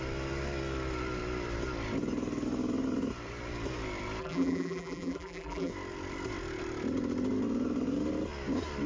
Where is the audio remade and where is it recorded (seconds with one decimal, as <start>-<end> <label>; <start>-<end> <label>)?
0.0-4.2 recorded; 4.2-5.7 remade; 5.7-8.9 recorded